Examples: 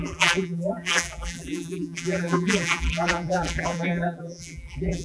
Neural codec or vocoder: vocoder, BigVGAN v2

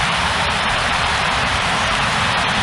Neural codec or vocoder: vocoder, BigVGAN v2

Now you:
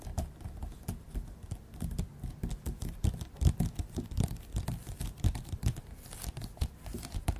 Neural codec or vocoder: none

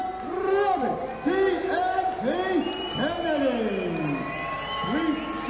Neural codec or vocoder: none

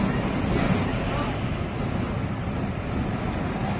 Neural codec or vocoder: none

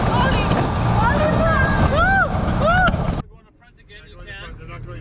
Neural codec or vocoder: none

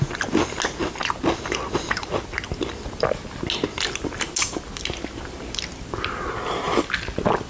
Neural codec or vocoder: none